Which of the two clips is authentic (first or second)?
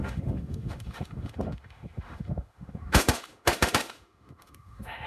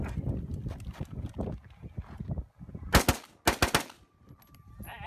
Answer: second